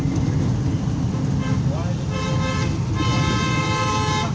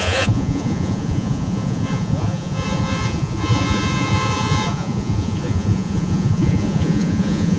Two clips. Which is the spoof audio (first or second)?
second